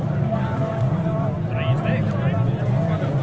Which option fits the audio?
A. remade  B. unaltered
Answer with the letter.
B